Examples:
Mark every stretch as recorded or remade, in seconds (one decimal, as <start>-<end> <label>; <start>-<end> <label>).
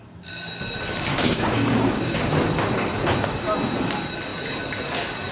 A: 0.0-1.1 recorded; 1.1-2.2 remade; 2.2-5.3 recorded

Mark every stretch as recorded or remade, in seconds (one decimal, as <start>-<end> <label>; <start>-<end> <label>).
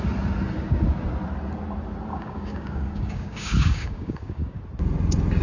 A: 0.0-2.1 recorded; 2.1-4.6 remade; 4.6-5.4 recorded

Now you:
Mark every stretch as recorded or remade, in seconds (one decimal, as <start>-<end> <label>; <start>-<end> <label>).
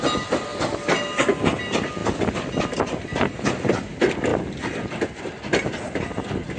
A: 0.0-6.6 recorded